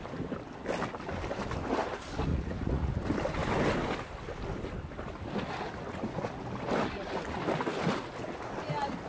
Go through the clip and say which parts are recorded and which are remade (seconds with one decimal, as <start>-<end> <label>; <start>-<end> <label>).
0.0-2.3 recorded; 2.3-2.9 remade; 2.9-9.1 recorded